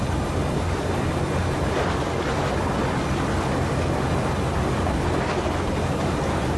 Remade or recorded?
recorded